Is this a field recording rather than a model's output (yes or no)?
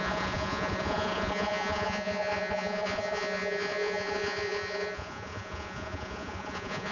no